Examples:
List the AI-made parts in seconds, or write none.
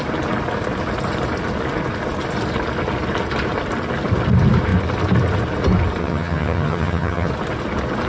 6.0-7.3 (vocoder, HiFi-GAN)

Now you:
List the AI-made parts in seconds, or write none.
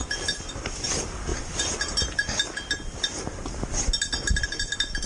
none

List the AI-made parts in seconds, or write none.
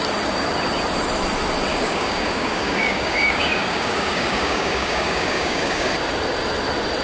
1.7-5.9 (codec, DAC)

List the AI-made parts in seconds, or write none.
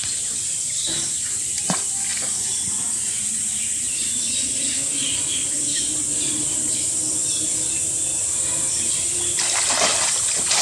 none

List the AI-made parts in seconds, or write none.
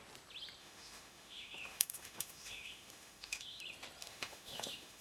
0.6-3.6 (autoencoder, DAC-VAE); 4.0-5.0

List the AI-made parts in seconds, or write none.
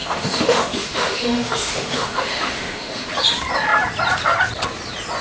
0.0-3.1 (autoencoder, DAC-VAE)